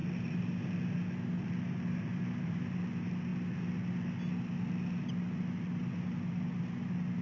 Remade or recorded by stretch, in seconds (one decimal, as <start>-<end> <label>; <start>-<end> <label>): 0.0-2.1 recorded; 2.1-2.7 remade; 2.7-7.2 recorded